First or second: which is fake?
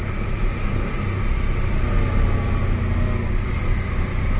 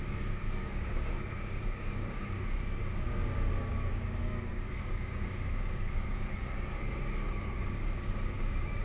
second